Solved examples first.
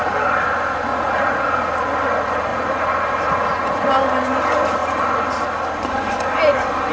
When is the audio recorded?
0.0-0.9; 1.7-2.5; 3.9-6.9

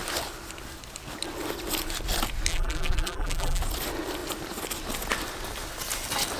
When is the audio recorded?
0.0-2.5; 3.6-6.4

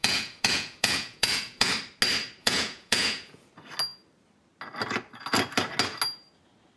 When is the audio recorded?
1.7-2.4; 3.5-6.8

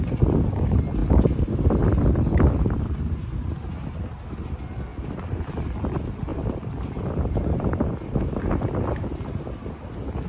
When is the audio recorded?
0.0-1.0; 3.3-6.3; 8.5-10.3

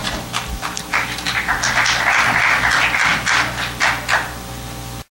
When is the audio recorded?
0.9-3.1; 3.8-5.1

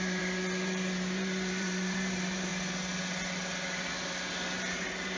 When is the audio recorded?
2.5-4.5

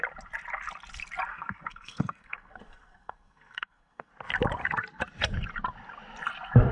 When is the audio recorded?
0.0-1.3; 4.1-6.7